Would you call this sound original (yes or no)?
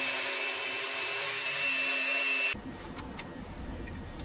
yes